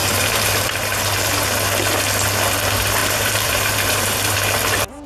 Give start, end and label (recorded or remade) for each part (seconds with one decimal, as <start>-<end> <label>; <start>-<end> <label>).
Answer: 0.0-1.0 remade; 1.0-3.0 recorded; 3.0-4.3 remade; 4.3-5.1 recorded